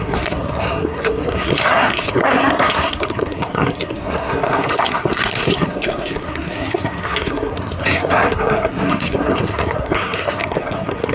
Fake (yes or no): yes